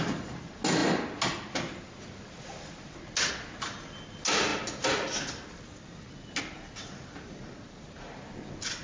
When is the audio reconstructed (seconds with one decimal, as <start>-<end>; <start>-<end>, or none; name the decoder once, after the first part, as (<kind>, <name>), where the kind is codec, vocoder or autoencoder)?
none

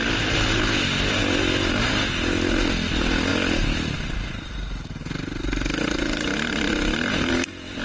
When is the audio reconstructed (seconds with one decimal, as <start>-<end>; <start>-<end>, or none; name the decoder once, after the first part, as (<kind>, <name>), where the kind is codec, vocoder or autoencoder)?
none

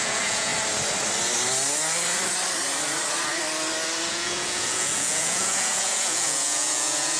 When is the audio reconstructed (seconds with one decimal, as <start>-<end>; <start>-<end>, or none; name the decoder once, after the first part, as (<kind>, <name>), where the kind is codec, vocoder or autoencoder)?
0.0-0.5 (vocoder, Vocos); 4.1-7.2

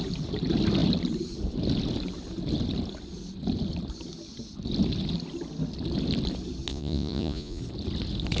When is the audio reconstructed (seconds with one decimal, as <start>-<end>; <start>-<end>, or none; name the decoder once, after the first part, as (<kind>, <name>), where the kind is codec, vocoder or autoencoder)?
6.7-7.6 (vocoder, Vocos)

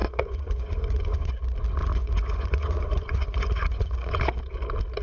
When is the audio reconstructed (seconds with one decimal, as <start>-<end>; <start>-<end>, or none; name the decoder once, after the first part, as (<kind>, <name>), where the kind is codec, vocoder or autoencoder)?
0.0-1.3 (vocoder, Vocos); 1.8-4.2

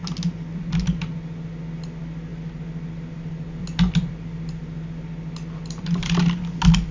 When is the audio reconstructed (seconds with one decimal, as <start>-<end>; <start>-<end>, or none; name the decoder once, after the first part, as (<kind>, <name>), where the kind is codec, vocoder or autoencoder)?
none